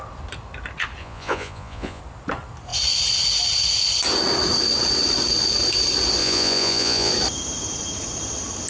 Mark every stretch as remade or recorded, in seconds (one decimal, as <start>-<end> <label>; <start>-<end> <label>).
0.0-1.0 recorded; 1.0-2.0 remade; 2.0-6.2 recorded; 6.2-7.1 remade; 7.1-8.7 recorded

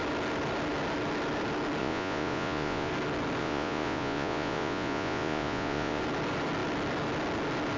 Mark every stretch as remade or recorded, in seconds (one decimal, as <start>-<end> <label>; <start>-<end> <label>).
0.0-1.8 recorded; 1.8-2.9 remade; 2.9-3.4 recorded; 3.4-6.0 remade; 6.0-7.8 recorded